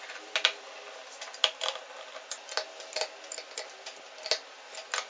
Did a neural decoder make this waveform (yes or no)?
no